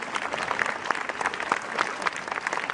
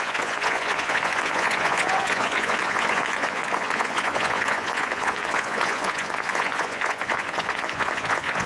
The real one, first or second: first